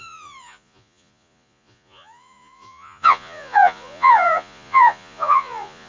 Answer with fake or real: fake